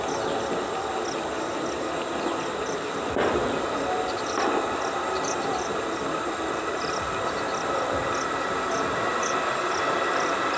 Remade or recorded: recorded